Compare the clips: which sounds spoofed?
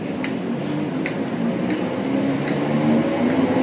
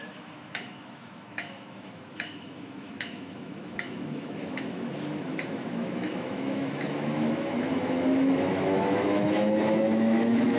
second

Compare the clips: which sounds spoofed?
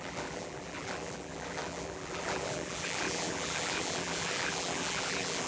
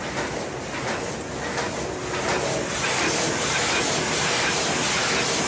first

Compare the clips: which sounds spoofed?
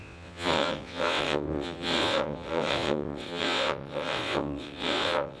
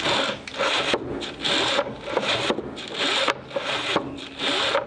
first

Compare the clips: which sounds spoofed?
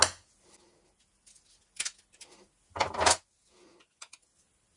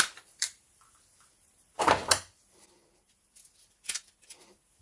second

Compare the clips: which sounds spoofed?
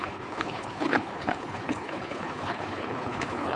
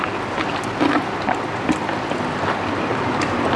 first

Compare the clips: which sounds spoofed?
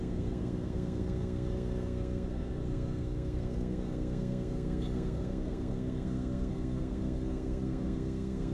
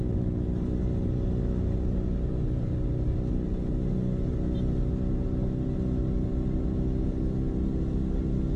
first